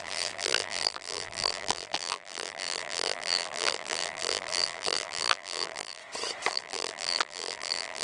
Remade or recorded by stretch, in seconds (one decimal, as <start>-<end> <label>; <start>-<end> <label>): 0.0-6.0 remade; 6.0-6.5 recorded; 6.5-8.0 remade

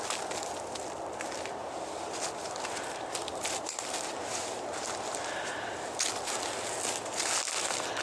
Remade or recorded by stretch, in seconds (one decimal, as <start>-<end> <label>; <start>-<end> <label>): 0.0-8.0 recorded